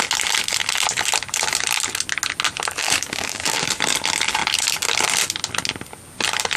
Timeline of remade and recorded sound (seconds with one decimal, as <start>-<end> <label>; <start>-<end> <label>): 0.0-2.8 recorded; 2.8-3.7 remade; 3.7-6.6 recorded